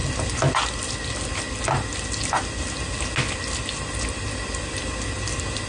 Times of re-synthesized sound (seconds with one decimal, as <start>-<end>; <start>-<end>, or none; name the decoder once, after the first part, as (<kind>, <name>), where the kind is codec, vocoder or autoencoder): none